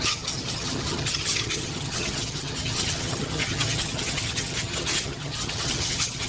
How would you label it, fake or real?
fake